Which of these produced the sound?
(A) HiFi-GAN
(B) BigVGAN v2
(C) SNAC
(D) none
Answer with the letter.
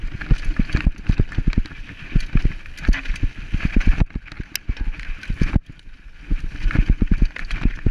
D